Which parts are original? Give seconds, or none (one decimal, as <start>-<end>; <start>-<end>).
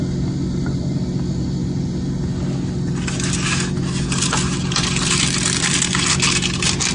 0.0-6.9